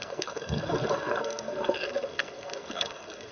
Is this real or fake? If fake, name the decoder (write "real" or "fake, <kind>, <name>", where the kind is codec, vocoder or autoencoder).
fake, codec, SNAC